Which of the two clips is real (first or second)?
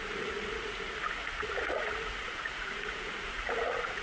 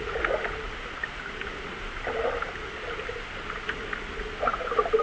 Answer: second